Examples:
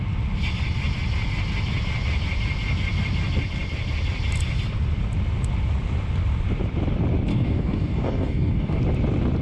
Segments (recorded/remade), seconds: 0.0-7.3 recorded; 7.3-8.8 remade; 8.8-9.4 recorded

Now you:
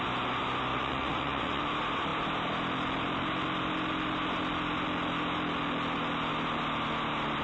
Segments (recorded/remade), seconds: 0.0-0.7 recorded; 0.7-1.6 remade; 1.6-7.4 recorded

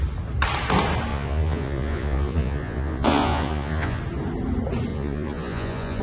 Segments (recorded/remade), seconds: 0.0-1.1 recorded; 1.1-4.0 remade; 4.0-4.9 recorded; 4.9-6.0 remade